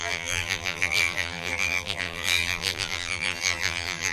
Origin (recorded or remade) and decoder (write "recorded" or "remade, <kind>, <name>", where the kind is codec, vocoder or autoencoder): remade, vocoder, BigVGAN v2